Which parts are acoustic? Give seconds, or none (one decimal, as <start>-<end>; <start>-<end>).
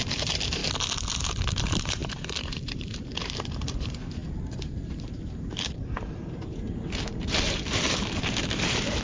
0.6-1.6; 4.2-5.0